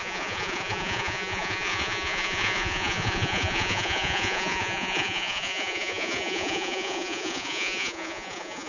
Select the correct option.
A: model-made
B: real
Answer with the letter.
A